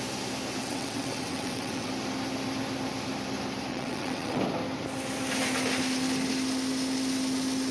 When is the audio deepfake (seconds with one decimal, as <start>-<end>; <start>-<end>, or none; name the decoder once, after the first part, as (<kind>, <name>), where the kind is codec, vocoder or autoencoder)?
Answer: 0.6-1.9 (vocoder, WaveNeXt); 3.7-4.4